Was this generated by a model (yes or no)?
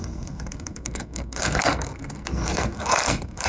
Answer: yes